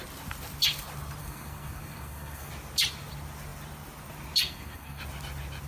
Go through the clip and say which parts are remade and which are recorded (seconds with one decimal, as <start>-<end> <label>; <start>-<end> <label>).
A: 0.0-1.2 recorded; 1.2-2.5 remade; 2.5-4.4 recorded; 4.4-5.0 remade; 5.0-5.7 recorded